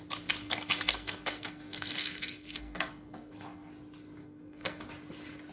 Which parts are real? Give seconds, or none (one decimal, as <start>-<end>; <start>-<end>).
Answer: 0.0-0.4; 3.7-4.2; 4.8-5.5